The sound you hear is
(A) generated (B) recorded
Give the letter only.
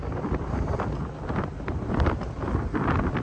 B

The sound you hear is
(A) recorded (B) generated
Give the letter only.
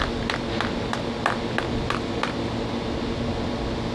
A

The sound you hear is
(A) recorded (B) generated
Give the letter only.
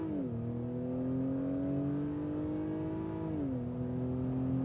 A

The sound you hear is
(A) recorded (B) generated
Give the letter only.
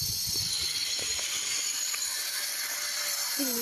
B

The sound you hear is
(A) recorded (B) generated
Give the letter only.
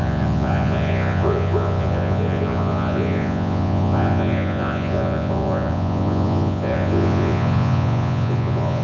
B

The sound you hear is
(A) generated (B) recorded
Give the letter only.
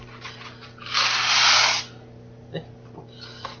B